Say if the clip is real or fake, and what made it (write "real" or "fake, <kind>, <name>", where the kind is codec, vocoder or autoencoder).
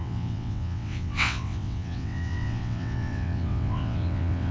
fake, vocoder, WaveNeXt